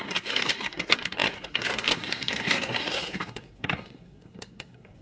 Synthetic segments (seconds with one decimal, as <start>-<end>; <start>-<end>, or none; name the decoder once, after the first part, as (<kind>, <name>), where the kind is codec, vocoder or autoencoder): 0.0-5.0 (codec, SNAC)